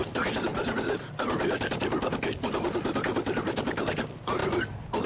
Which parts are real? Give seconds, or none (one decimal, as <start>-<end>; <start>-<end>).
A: 0.0-5.1